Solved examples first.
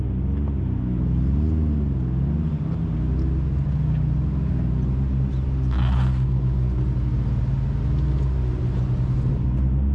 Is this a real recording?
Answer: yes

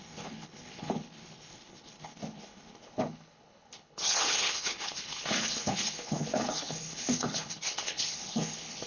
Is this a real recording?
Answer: no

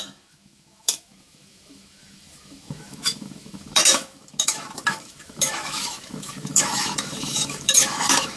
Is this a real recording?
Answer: no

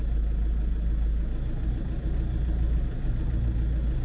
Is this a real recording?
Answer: yes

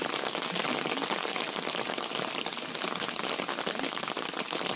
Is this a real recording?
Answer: yes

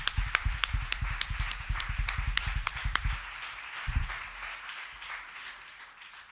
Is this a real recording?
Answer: no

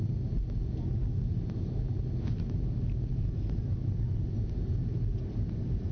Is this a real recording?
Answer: yes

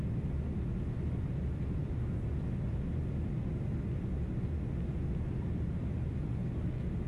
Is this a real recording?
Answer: yes